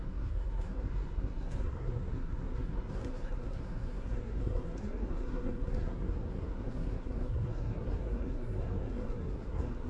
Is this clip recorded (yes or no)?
no